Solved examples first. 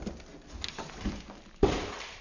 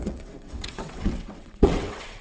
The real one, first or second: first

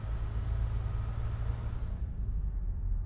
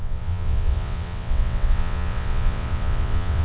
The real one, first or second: first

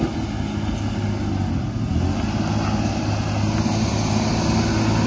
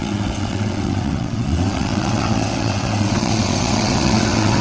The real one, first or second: first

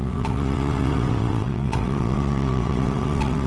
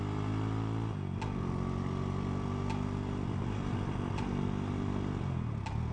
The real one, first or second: second